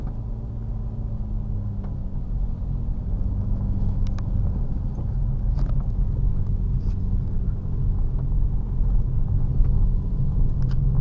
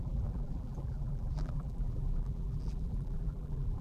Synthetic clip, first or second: second